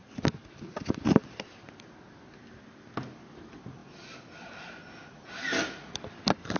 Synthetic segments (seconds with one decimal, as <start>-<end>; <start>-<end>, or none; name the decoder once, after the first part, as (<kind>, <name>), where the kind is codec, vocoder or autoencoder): none